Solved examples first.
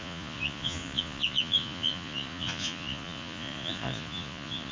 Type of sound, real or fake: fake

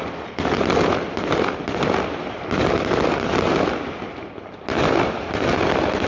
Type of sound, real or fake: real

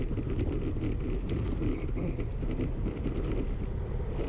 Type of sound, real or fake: real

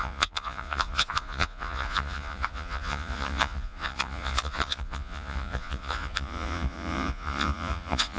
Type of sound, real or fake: fake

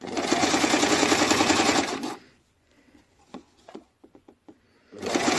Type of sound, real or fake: fake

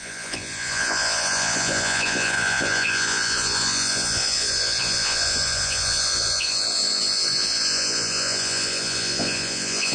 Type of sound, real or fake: fake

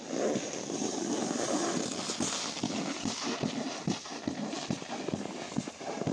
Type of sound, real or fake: real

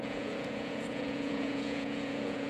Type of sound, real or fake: fake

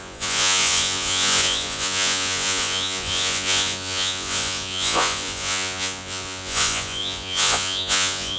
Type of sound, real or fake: fake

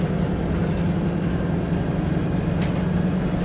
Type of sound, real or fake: real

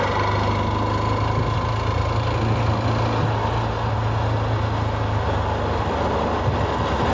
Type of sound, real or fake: real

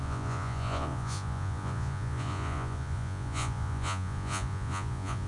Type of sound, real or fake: fake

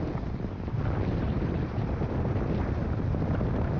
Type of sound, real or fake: real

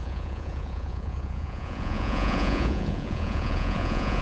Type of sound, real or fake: fake